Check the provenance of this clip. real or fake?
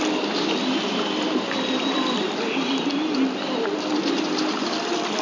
real